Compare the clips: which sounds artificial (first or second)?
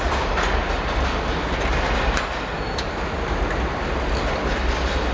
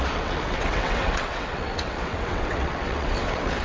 second